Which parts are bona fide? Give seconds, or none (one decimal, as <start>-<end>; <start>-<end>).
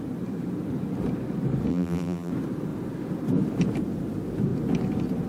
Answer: 0.0-1.7; 2.3-5.3